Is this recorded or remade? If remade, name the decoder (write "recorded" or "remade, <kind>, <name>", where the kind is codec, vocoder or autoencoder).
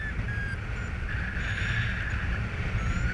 recorded